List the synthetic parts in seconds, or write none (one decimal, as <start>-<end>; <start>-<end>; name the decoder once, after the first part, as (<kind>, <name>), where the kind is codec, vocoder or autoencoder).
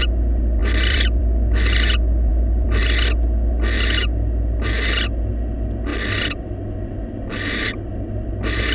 0.6-1.2 (vocoder, BigVGAN v2); 2.3-2.8